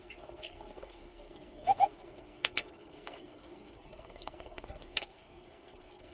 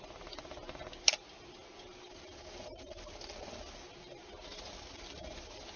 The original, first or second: second